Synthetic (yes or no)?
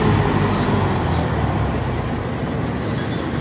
no